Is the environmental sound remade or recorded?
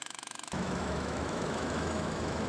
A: remade